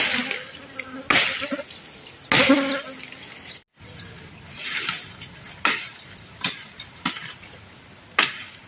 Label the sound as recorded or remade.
recorded